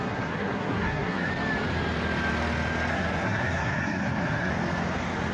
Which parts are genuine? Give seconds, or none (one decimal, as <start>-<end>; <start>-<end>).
1.3-2.9; 4.5-5.3

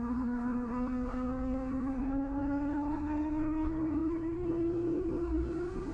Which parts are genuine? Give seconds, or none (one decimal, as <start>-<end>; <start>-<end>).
none